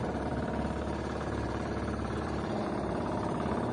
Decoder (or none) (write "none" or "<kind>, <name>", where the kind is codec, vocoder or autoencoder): vocoder, BigVGAN v2